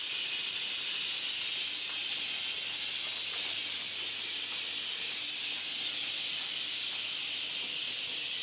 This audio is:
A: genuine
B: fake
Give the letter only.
A